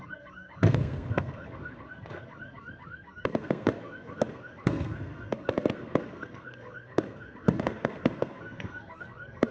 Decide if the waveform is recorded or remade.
remade